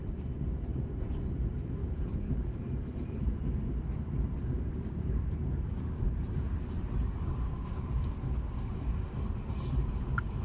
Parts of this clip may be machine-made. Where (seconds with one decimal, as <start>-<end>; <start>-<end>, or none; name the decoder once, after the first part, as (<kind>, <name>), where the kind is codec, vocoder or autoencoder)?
1.8-2.7 (codec, DAC); 4.4-6.6; 7.5-9.2